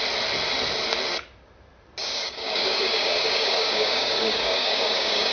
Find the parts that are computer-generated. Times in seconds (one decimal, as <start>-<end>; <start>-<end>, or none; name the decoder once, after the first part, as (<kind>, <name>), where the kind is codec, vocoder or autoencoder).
2.0-5.3 (codec, DAC)